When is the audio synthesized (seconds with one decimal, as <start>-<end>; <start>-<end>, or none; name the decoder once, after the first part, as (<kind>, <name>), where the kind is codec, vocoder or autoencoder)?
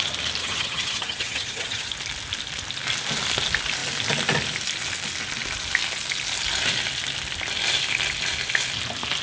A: 0.4-1.9 (vocoder, HiFi-GAN)